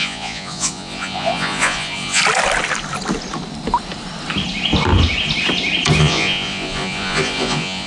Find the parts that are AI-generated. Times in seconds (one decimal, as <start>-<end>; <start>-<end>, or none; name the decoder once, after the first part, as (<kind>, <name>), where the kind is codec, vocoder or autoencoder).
0.0-2.2 (vocoder, Vocos); 6.0-7.9